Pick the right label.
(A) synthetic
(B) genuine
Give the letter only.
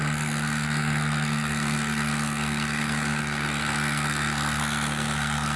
A